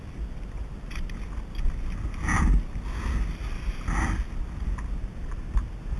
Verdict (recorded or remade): recorded